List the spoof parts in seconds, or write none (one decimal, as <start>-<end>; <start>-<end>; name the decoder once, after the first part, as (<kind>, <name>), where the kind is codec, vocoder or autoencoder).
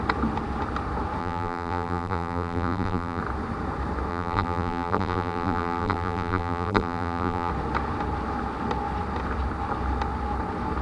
1.2-3.2 (vocoder, BigVGAN v2); 4.1-7.5